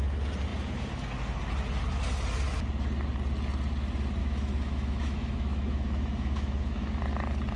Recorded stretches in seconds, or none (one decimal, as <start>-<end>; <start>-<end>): 0.0-4.2; 7.0-7.6